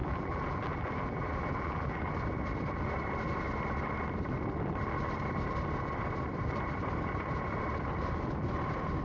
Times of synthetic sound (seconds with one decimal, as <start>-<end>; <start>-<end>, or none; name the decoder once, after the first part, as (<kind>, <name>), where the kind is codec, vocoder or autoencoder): 0.0-2.1 (vocoder, BigVGAN v2)